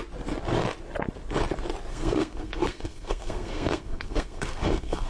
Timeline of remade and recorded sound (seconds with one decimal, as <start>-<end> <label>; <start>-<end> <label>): 0.0-1.9 recorded; 1.9-5.1 remade